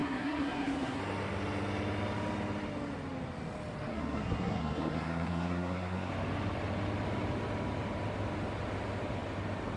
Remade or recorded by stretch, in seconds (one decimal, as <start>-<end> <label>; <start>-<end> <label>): 0.0-1.0 remade; 1.0-3.9 recorded; 3.9-6.1 remade; 6.1-9.8 recorded